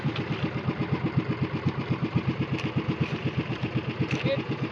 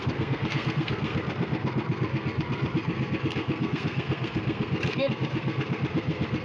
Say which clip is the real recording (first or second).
first